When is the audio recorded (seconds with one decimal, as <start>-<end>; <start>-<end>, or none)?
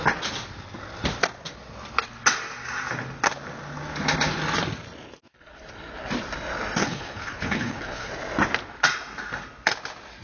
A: 0.0-6.8; 8.1-10.2